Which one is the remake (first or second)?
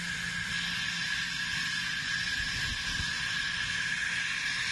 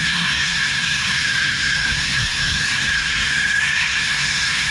second